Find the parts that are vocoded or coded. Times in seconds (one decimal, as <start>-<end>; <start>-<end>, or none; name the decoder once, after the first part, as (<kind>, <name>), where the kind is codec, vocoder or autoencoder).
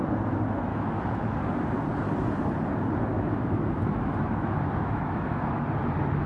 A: 0.7-1.3 (autoencoder, DAC-VAE); 3.1-5.6